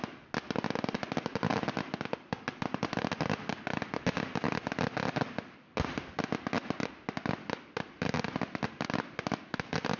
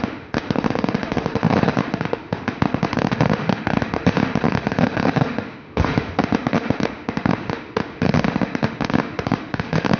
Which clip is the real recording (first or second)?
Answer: first